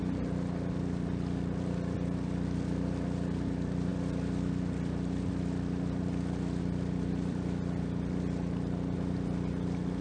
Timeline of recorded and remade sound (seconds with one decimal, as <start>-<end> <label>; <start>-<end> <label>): 0.0-10.0 recorded